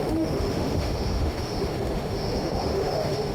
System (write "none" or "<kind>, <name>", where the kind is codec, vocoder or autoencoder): autoencoder, DAC-VAE